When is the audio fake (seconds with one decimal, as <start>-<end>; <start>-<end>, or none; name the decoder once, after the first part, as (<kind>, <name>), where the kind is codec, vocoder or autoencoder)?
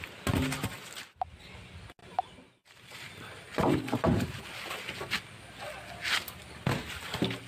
2.0-4.4 (vocoder, BigVGAN v2)